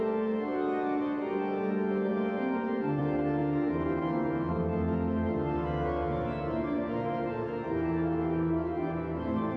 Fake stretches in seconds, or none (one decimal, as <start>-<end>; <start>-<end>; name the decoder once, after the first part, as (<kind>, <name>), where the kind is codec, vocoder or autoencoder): none